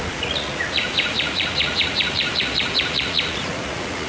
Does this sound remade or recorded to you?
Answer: remade